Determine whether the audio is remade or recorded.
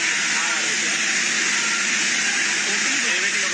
recorded